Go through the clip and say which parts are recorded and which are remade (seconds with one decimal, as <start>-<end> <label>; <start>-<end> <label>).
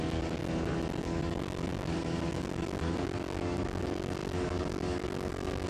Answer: 0.0-0.4 remade; 0.4-1.0 recorded; 1.0-5.7 remade